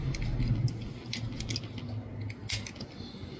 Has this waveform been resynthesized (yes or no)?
no